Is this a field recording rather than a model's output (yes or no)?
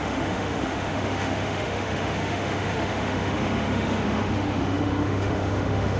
no